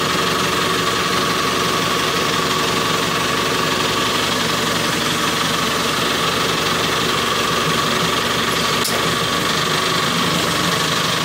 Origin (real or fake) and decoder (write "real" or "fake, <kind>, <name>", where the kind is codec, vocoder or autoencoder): real